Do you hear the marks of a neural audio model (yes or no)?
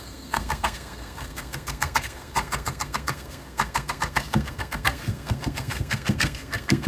yes